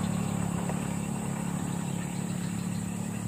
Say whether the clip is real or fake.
real